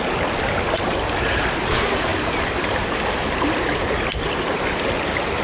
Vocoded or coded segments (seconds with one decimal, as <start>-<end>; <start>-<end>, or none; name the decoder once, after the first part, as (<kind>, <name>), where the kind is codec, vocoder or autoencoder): none